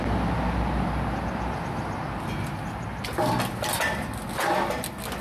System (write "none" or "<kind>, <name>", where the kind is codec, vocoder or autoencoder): none